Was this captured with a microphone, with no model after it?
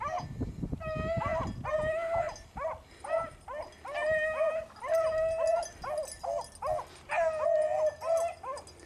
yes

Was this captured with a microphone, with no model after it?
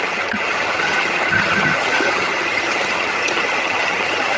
no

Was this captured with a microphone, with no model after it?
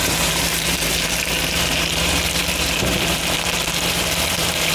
no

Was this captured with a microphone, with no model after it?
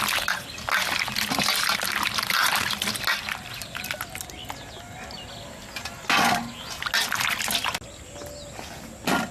yes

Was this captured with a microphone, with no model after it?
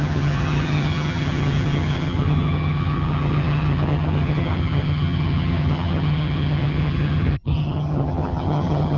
no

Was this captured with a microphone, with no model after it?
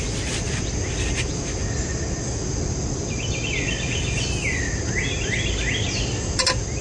yes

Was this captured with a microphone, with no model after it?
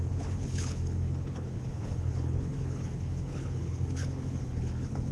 no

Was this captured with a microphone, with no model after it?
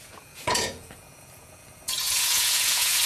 no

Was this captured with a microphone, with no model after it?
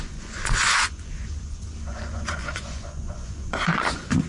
no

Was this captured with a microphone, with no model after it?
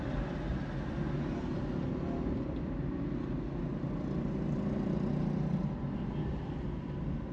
yes